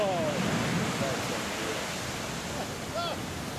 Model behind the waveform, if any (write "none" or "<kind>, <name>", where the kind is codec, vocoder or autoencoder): none